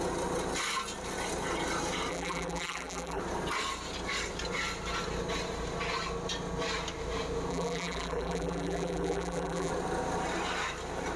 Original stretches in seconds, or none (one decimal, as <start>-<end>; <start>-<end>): 0.0-2.1; 3.2-7.5; 9.7-11.2